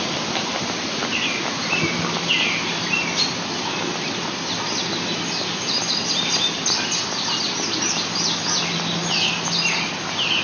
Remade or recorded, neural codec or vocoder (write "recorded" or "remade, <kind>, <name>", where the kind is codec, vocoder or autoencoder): recorded